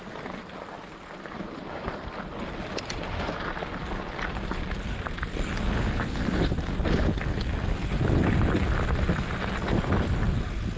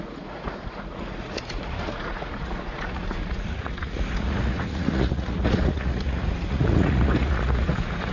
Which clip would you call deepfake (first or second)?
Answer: second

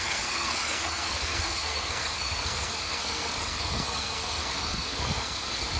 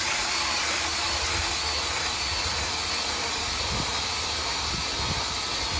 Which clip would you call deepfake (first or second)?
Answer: first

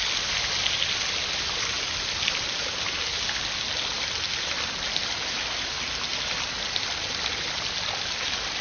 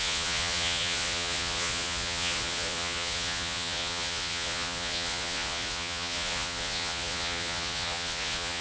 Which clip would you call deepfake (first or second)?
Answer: second